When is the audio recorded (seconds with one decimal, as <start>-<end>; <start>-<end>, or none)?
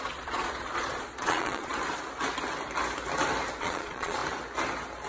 1.7-3.6; 4.2-5.1